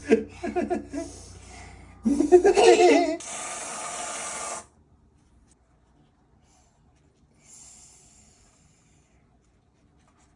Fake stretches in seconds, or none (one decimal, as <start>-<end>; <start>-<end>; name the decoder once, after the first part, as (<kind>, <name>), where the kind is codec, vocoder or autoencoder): 1.9-2.6 (codec, SNAC)